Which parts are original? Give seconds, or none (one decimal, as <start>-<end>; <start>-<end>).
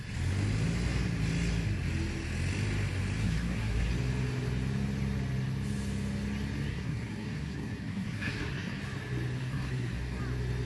0.0-3.2; 3.9-6.7; 8.8-9.4; 10.2-10.7